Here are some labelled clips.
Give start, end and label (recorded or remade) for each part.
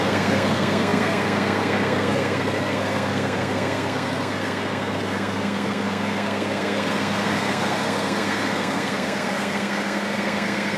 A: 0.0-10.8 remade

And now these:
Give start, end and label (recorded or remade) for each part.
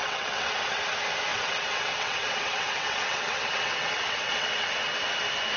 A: 0.0-0.8 remade; 0.8-1.3 recorded; 1.3-4.7 remade; 4.7-5.6 recorded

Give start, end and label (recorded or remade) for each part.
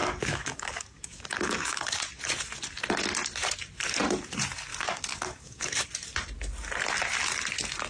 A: 0.0-2.0 remade; 2.0-4.7 recorded; 4.7-5.9 remade; 5.9-7.9 recorded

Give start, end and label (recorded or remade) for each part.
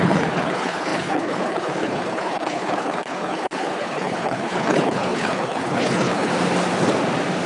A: 0.0-6.3 remade; 6.3-7.5 recorded